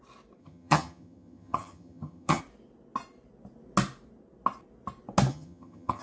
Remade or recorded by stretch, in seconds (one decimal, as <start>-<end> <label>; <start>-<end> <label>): 0.0-0.4 recorded; 0.4-2.4 remade; 2.4-5.3 recorded; 5.3-6.0 remade